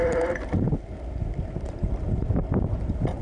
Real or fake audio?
real